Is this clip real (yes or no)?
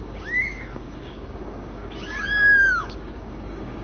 no